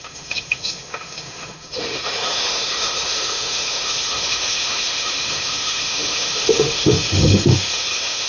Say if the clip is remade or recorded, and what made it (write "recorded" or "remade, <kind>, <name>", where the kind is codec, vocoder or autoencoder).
remade, autoencoder, DAC-VAE